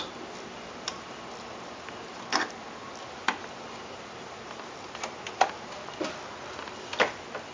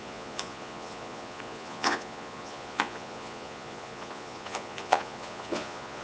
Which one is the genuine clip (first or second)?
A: first